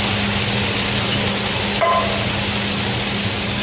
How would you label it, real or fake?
real